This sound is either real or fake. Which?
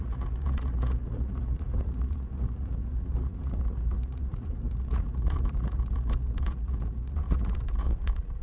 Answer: fake